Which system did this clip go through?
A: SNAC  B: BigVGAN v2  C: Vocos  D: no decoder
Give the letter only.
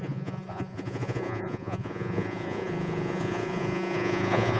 C